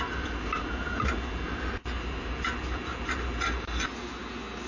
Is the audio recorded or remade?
recorded